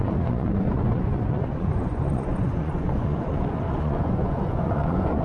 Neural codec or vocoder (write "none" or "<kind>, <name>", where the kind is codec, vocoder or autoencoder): vocoder, Vocos